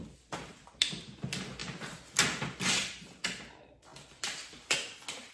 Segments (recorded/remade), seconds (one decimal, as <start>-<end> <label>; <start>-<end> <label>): 0.0-5.3 recorded